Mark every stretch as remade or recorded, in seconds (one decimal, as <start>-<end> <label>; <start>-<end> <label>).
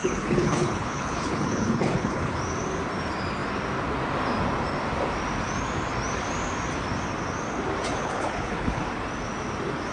0.0-2.4 remade; 2.4-8.0 recorded; 8.0-8.8 remade; 8.8-9.9 recorded